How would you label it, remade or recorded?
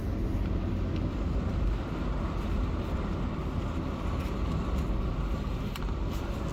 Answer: recorded